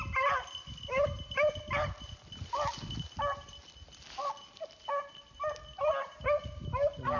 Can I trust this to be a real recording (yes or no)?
yes